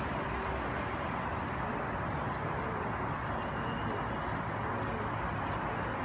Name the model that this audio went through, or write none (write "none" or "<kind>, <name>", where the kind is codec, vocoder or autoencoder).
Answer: none